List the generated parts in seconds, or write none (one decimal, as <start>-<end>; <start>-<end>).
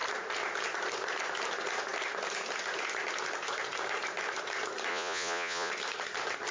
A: 4.9-5.7